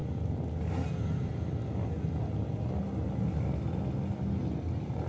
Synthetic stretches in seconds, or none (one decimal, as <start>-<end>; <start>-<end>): none